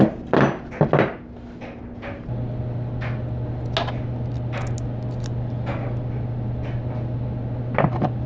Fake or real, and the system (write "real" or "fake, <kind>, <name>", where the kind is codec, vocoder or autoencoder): real